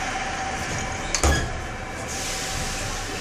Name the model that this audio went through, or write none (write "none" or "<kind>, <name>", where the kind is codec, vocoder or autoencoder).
none